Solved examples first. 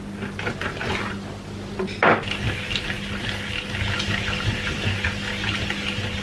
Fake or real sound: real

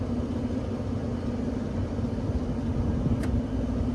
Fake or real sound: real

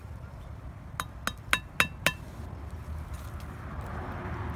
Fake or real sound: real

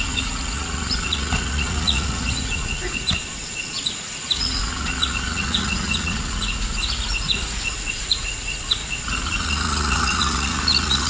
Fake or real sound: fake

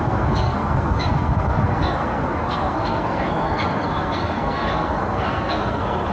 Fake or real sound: fake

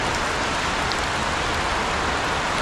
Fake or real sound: real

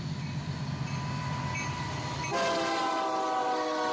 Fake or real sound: real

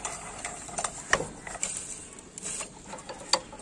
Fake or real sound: real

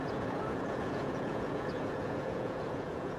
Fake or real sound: fake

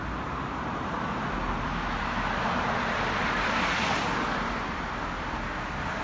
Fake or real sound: real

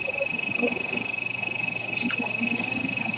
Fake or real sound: fake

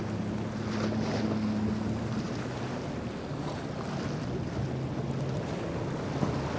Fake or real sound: real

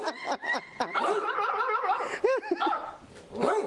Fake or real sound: real